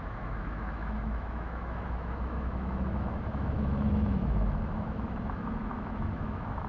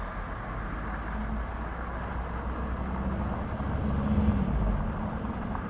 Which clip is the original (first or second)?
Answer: second